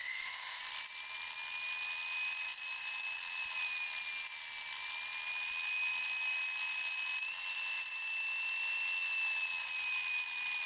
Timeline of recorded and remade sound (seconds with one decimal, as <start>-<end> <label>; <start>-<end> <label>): 0.0-0.6 remade; 0.6-10.7 recorded